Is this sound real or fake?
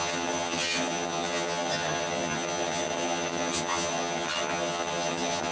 fake